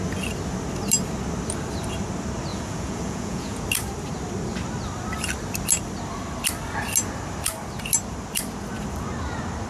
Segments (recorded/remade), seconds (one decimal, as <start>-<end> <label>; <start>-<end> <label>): 0.0-2.5 recorded; 2.5-3.6 remade; 3.6-9.7 recorded